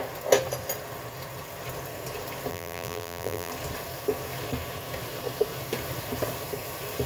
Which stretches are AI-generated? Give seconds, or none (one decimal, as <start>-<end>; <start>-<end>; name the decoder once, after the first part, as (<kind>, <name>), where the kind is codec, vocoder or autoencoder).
2.5-3.5 (vocoder, BigVGAN v2)